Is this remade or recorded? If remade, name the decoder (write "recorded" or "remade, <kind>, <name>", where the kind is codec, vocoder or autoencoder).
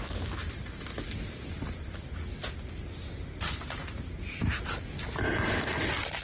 recorded